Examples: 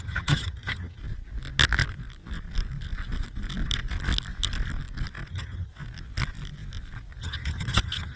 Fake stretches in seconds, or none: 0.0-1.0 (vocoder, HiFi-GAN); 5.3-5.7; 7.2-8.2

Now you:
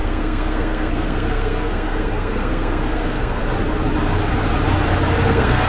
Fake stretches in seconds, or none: 0.0-3.4 (codec, SNAC); 5.3-5.7

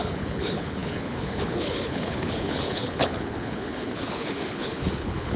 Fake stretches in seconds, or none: 0.0-5.4 (codec, HILCodec)